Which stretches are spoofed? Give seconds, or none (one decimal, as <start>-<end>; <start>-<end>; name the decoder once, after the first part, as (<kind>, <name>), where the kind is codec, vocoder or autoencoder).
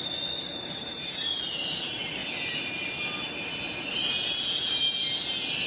0.5-1.8 (vocoder, BigVGAN v2)